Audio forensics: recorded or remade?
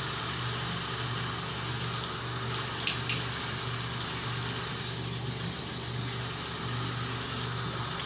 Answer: recorded